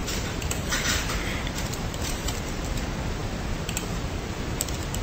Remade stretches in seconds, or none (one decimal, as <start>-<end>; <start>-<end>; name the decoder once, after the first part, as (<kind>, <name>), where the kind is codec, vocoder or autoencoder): 0.0-2.4 (vocoder, BigVGAN v2)